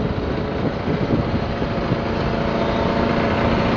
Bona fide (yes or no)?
yes